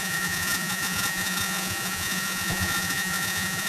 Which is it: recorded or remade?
remade